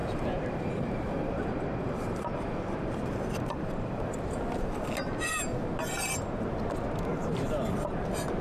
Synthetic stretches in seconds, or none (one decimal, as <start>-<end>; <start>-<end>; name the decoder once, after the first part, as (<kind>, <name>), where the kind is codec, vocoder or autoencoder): 0.0-4.8 (vocoder, BigVGAN v2); 7.1-8.0